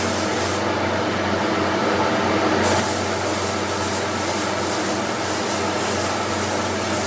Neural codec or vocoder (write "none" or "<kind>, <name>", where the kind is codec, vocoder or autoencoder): none